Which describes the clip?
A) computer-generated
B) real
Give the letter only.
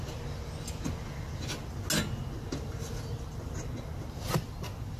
B